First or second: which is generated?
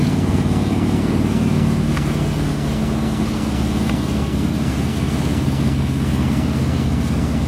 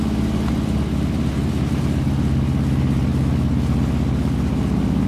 first